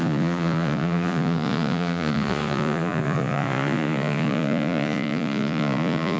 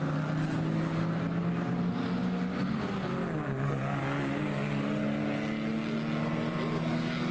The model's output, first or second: first